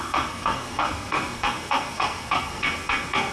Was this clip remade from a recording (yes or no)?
yes